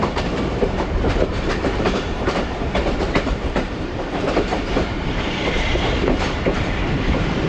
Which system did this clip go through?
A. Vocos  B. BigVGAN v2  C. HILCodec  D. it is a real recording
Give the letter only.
B